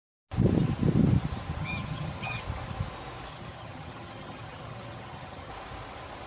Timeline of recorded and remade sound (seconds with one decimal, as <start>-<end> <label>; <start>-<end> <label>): 0.0-1.6 recorded; 1.6-2.4 remade; 2.4-3.3 recorded; 3.3-5.5 remade; 5.5-6.3 recorded